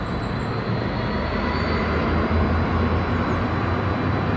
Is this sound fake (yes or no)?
no